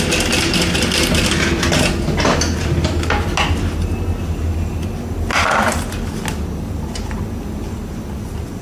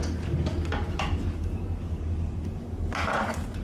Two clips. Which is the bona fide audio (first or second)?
first